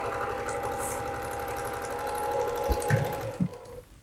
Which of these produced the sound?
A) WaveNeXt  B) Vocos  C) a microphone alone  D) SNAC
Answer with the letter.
C